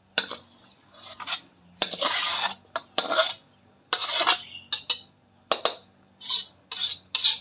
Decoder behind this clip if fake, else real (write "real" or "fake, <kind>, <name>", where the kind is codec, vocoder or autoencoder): real